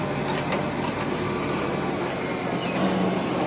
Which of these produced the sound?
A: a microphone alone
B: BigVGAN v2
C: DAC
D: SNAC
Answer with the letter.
A